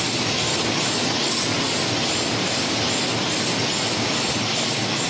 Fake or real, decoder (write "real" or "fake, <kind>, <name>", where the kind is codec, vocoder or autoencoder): real